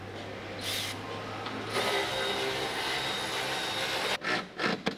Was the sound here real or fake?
real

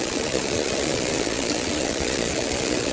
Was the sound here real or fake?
fake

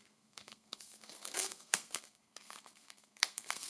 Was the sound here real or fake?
fake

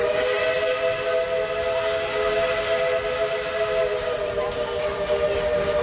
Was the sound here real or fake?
real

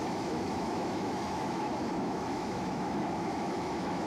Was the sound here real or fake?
fake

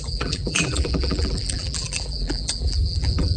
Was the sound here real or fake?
fake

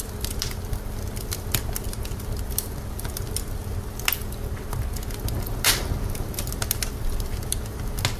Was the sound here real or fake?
real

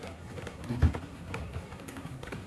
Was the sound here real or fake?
fake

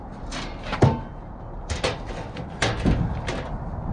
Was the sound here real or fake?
real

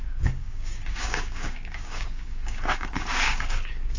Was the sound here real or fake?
fake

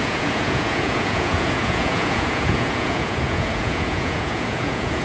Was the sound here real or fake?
fake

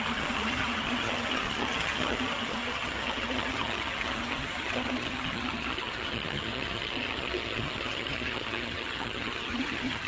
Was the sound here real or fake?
fake